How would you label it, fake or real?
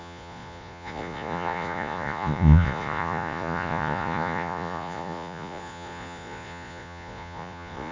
fake